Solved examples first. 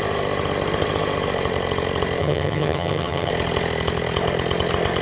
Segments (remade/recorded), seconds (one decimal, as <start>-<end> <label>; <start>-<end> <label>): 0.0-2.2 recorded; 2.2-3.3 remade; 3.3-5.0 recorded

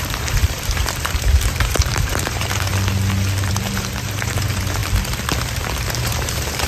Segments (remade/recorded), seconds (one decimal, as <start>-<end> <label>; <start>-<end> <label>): 0.0-2.7 remade; 2.7-3.5 recorded; 3.5-4.8 remade; 4.8-6.0 recorded; 6.0-6.7 remade

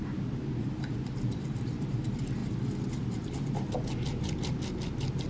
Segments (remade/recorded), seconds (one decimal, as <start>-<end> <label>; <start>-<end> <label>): 0.0-5.3 recorded

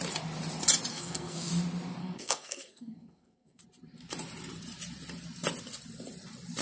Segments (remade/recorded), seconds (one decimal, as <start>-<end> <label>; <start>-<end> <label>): 0.0-0.9 recorded; 0.9-1.5 remade; 1.5-2.0 recorded; 2.0-3.6 remade; 3.6-6.6 recorded

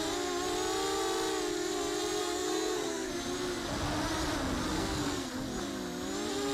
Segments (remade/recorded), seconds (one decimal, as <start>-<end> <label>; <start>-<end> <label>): 0.0-2.2 recorded; 2.2-3.1 remade; 3.1-4.7 recorded; 4.7-5.3 remade; 5.3-6.5 recorded

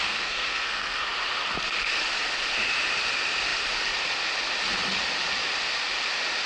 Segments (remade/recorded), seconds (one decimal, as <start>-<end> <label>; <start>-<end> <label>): 0.0-1.0 remade; 1.0-6.5 recorded